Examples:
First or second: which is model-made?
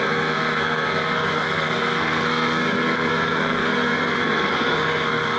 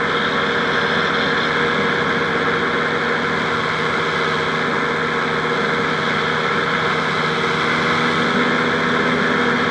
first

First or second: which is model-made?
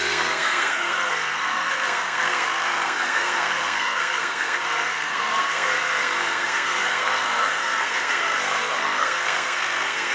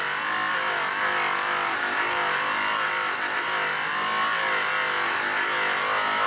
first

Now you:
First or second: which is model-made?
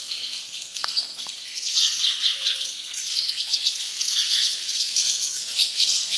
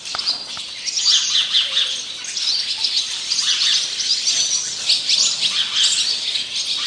first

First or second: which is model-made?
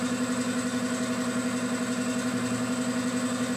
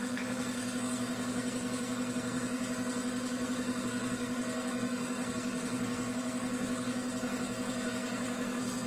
second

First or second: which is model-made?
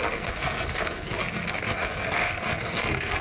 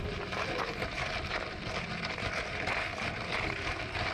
first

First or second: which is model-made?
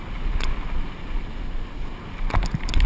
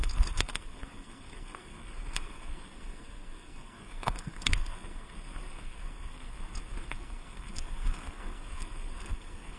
second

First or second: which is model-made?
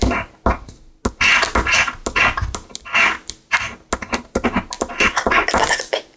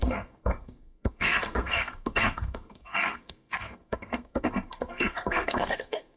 second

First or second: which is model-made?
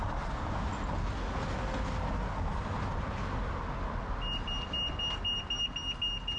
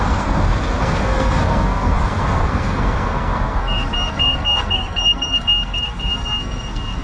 second